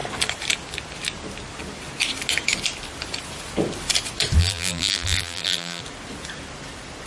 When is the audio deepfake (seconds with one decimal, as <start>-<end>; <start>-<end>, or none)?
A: 4.4-5.8